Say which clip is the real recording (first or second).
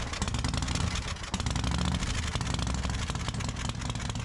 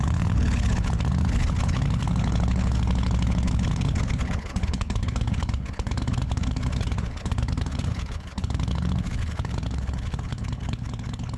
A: first